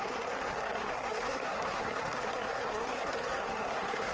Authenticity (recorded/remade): remade